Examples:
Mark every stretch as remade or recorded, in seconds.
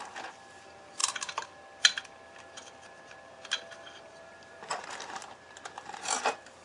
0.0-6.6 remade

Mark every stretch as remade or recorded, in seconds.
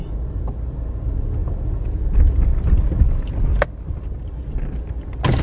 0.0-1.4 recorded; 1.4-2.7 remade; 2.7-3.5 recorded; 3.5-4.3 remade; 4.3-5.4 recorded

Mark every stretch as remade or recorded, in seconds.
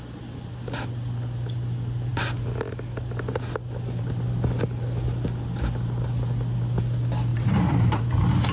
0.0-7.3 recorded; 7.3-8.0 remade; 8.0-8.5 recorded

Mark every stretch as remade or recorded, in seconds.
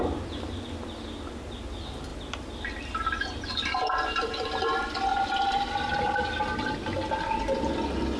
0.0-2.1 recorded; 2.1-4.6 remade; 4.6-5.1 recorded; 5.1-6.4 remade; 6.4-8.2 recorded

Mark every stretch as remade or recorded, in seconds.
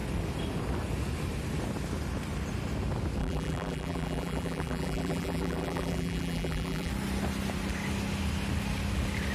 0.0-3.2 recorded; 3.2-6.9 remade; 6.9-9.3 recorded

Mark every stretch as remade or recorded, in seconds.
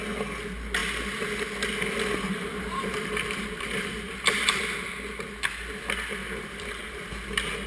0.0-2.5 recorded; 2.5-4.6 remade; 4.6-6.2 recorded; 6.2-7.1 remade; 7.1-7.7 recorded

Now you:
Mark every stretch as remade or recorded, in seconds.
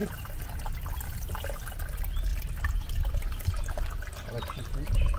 0.0-2.3 recorded; 2.3-3.5 remade; 3.5-5.2 recorded